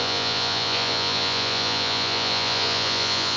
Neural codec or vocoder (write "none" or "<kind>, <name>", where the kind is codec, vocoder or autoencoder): vocoder, Vocos